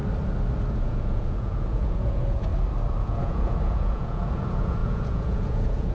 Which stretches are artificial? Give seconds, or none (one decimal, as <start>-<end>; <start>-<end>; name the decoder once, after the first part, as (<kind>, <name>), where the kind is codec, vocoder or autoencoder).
0.7-2.5 (vocoder, Vocos); 3.0-5.9